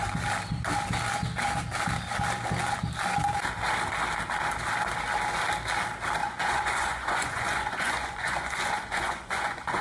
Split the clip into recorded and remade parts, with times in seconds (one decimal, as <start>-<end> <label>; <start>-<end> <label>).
0.0-6.2 recorded; 6.2-9.8 remade